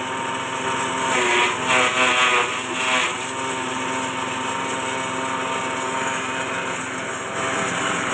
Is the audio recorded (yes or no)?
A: yes